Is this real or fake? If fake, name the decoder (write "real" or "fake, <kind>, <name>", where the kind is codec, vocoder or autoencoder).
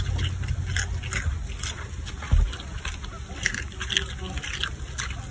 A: real